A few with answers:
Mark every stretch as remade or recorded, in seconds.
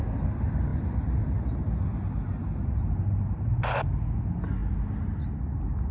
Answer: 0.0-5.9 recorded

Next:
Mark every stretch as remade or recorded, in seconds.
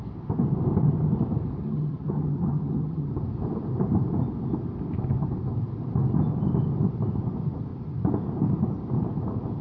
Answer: 0.0-1.6 recorded; 1.6-3.1 remade; 3.1-9.6 recorded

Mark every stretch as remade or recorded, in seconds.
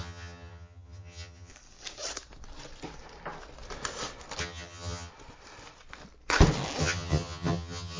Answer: 0.0-1.5 remade; 1.5-4.4 recorded; 4.4-5.1 remade; 5.1-6.8 recorded; 6.8-8.0 remade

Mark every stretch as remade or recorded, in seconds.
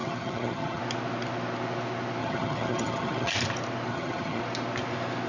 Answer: 0.0-0.8 remade; 0.8-2.2 recorded; 2.2-3.3 remade; 3.3-3.9 recorded; 3.9-4.4 remade; 4.4-5.3 recorded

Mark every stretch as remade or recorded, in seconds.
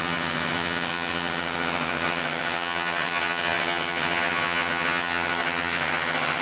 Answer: 0.0-6.4 remade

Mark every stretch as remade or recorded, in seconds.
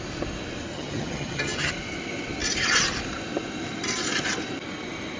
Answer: 0.0-0.7 recorded; 0.7-1.7 remade; 1.7-5.2 recorded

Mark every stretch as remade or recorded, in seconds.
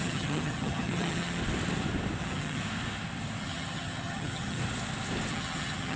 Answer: 0.0-1.4 remade; 1.4-2.2 recorded; 2.2-2.6 remade; 2.6-3.4 recorded; 3.4-4.6 remade; 4.6-5.3 recorded; 5.3-6.0 remade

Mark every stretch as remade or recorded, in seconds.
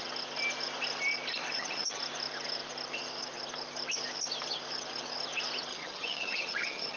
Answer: 0.0-1.4 recorded; 1.4-2.0 remade; 2.0-5.7 recorded; 5.7-7.0 remade